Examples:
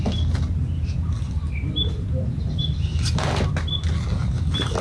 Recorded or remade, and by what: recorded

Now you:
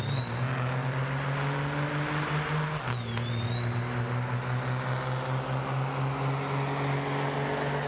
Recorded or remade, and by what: recorded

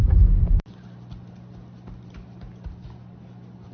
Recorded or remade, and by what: recorded